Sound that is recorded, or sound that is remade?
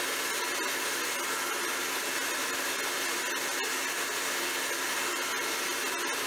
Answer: recorded